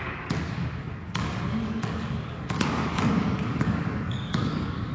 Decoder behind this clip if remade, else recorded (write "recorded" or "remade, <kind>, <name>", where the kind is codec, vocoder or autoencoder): remade, codec, DAC